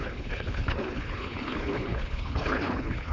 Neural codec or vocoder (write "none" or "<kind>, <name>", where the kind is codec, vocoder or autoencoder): codec, HILCodec